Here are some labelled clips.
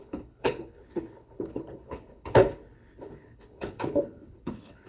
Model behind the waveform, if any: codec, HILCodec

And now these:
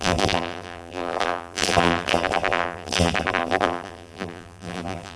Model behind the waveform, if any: vocoder, BigVGAN v2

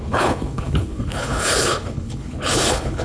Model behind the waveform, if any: codec, HILCodec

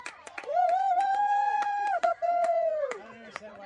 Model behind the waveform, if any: vocoder, Vocos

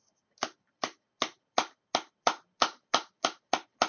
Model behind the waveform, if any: none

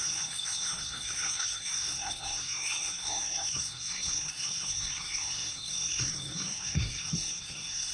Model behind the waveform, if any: codec, SNAC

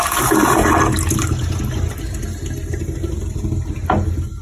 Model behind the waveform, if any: none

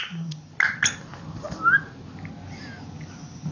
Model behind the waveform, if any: none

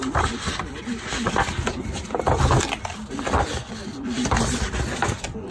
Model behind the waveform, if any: vocoder, BigVGAN v2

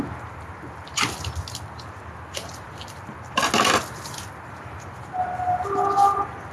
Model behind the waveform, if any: none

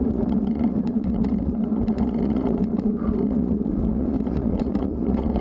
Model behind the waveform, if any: vocoder, Vocos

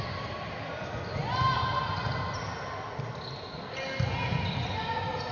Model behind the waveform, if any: none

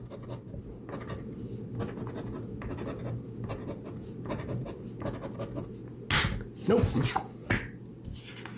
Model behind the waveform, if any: none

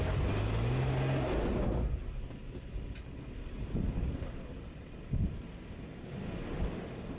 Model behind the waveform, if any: none